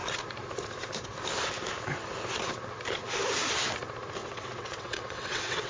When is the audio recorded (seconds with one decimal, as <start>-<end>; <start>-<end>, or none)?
0.0-4.2